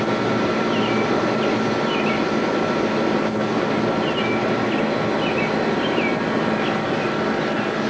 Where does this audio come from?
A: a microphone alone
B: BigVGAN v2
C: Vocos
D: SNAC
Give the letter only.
A